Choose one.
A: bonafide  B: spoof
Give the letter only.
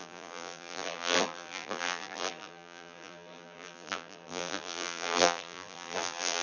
B